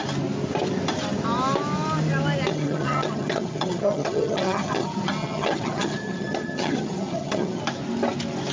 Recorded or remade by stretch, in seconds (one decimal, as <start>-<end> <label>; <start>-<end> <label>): 0.0-2.5 recorded; 2.5-7.6 remade; 7.6-8.5 recorded